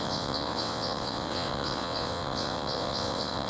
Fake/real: fake